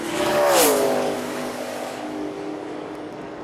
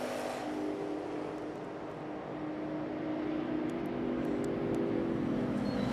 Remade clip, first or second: first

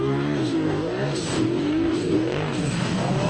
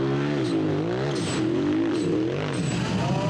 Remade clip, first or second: first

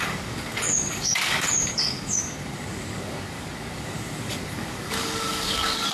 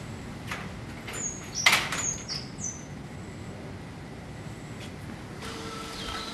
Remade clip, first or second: first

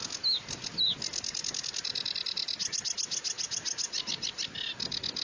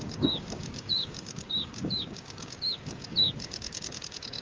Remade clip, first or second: second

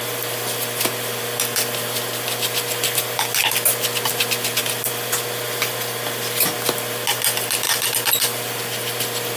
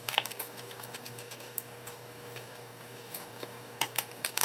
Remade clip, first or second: second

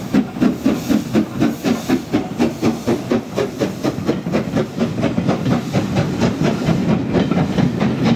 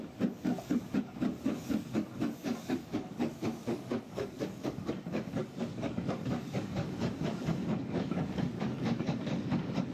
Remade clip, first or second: second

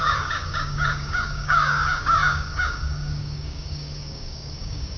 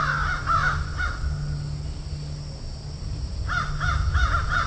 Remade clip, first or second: first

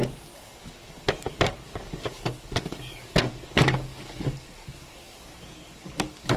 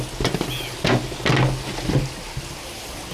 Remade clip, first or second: first